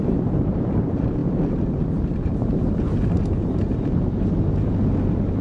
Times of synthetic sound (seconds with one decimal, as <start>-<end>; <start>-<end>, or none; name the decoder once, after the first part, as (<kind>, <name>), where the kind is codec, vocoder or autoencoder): 0.0-5.4 (vocoder, BigVGAN v2)